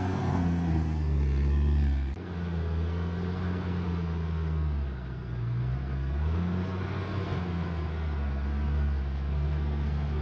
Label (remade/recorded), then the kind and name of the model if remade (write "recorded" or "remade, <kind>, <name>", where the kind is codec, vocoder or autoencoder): remade, codec, SNAC